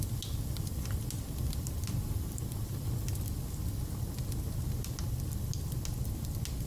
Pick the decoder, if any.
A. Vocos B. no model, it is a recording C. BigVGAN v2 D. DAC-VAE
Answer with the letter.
B